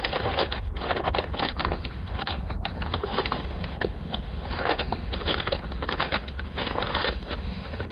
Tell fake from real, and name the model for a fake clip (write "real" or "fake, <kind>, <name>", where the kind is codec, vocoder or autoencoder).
fake, autoencoder, DAC-VAE